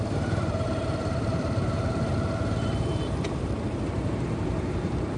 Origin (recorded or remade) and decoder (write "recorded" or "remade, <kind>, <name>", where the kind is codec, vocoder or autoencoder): remade, vocoder, BigVGAN v2